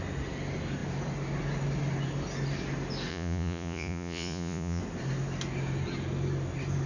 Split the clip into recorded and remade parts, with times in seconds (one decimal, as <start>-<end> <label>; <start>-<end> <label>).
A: 0.0-3.1 recorded; 3.1-4.8 remade; 4.8-6.9 recorded